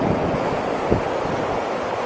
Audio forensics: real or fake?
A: real